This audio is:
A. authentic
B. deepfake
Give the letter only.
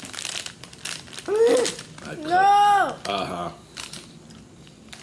A